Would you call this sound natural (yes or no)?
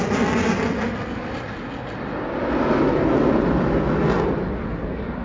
yes